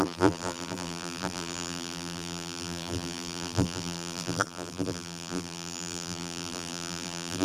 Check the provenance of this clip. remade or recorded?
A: remade